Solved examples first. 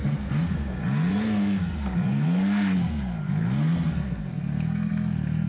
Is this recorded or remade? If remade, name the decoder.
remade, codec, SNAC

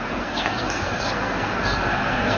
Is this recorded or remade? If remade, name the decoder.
remade, codec, SNAC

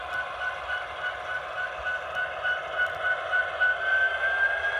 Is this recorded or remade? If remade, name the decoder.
recorded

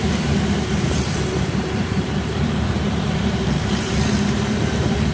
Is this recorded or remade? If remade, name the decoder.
remade, vocoder, BigVGAN v2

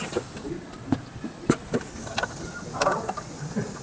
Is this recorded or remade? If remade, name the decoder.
remade, vocoder, BigVGAN v2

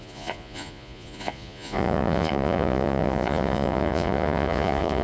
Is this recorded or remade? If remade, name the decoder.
remade, vocoder, Vocos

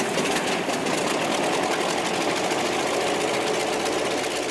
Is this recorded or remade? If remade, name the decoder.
recorded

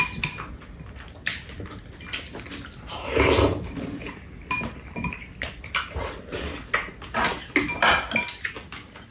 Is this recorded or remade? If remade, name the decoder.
recorded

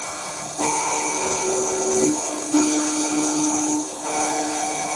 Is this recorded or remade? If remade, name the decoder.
remade, codec, HILCodec